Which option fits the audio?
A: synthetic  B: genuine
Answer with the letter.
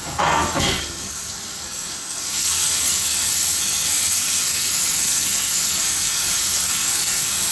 A